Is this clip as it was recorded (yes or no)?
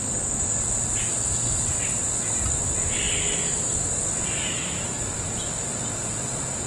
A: yes